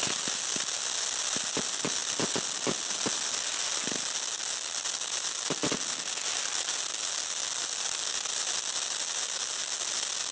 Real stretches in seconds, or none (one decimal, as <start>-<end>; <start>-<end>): 0.0-10.3